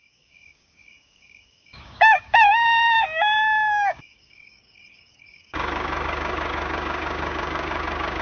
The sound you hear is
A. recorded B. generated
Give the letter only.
B